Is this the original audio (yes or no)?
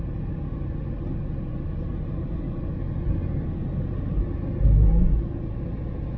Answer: yes